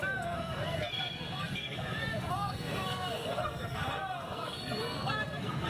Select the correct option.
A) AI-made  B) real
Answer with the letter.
A